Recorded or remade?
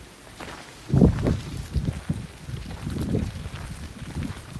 recorded